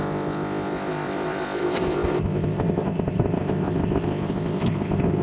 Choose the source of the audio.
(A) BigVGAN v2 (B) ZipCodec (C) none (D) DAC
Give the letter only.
B